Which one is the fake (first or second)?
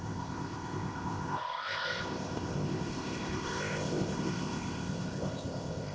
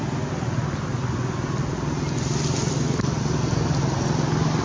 first